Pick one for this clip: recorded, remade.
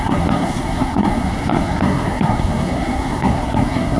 remade